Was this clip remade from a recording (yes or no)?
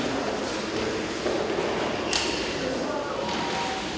no